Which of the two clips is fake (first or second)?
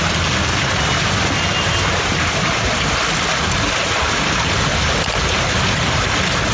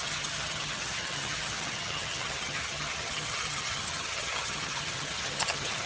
second